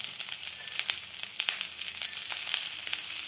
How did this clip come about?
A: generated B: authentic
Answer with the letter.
B